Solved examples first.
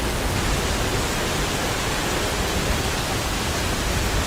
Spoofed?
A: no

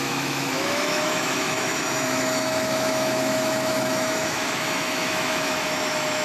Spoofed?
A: yes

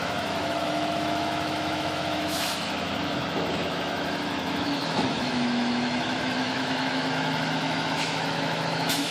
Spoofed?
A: yes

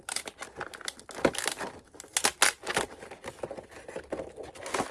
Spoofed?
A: no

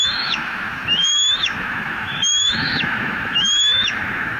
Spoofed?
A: yes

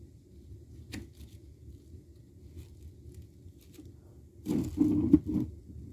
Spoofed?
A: no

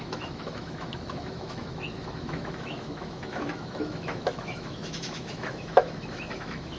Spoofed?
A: yes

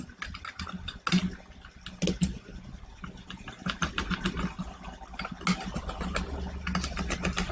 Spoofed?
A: no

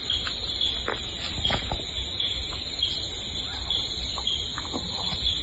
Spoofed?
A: no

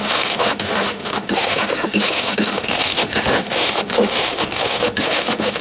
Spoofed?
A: yes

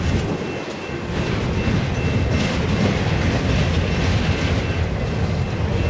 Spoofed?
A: no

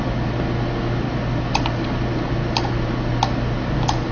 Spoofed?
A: no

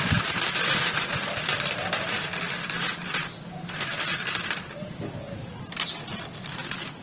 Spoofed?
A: no